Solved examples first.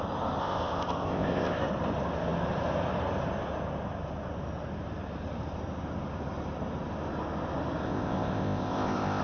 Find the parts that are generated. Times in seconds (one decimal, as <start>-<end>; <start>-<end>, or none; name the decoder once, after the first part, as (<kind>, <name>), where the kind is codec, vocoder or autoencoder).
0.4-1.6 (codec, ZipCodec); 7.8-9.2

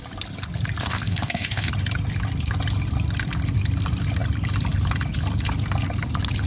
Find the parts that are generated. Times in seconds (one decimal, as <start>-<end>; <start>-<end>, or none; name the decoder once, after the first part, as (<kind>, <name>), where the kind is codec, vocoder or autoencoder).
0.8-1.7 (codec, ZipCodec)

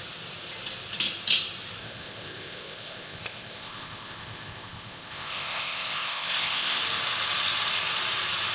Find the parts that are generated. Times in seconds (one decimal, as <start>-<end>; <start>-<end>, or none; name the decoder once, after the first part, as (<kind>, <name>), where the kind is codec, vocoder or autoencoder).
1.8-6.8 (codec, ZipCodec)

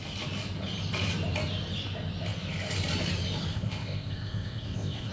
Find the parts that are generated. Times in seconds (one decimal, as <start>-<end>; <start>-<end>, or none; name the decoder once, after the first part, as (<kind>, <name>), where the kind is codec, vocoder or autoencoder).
3.5-5.1 (codec, ZipCodec)